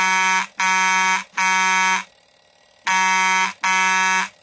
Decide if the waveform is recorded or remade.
recorded